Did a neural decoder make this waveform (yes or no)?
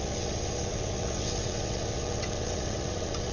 yes